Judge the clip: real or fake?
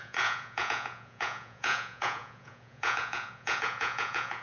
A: fake